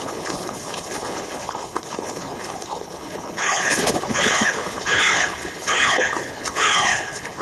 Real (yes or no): no